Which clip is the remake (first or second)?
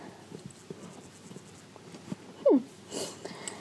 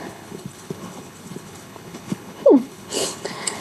second